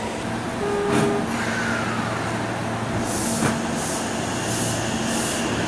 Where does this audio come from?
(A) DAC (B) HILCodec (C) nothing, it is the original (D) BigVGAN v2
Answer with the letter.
C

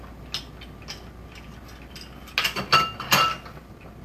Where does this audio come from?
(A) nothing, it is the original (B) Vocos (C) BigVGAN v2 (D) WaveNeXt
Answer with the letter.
A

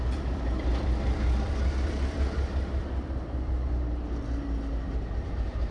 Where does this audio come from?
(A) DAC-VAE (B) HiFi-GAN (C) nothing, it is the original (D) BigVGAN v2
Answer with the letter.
D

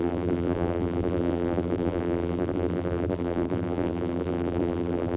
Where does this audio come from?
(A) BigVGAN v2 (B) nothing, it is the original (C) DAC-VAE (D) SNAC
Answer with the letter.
A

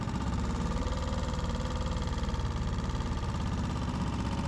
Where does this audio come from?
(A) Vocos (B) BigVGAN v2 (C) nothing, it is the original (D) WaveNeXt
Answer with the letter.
B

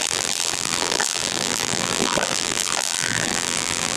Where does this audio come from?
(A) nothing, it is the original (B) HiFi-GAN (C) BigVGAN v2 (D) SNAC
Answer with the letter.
C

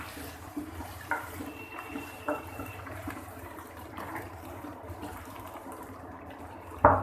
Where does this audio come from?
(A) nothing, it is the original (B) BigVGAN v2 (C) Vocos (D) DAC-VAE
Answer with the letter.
B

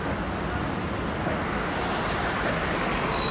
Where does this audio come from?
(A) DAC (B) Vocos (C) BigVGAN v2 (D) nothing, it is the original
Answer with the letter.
D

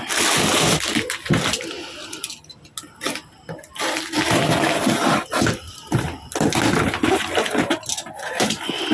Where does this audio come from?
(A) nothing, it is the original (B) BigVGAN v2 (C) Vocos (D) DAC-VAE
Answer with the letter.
A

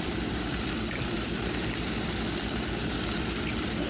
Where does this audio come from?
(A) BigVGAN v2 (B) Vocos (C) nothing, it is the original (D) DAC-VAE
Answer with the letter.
A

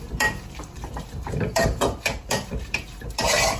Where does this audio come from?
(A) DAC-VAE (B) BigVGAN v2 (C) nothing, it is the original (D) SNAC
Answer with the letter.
B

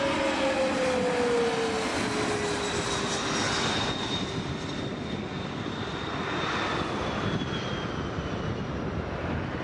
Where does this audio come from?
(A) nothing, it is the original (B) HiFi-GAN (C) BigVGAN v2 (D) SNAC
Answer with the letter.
A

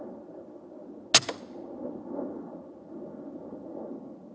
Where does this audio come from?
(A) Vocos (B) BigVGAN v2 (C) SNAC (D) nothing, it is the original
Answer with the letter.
D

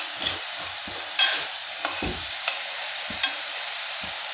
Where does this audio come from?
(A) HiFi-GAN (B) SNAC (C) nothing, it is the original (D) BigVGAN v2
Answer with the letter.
D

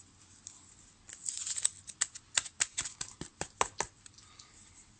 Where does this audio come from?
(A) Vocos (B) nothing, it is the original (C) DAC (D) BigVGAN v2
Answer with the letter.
B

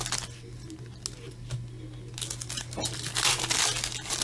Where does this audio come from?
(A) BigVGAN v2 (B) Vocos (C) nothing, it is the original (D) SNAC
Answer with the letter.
C